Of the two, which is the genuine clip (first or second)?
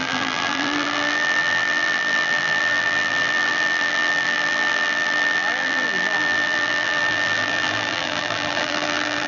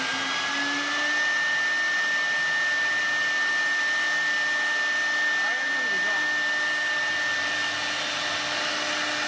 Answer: second